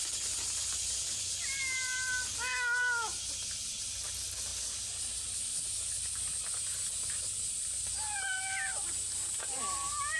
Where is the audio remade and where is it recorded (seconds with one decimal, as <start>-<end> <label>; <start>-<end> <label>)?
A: 0.0-10.2 recorded